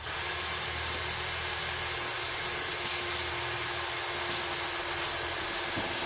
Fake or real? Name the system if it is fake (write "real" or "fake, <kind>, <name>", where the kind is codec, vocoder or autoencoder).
real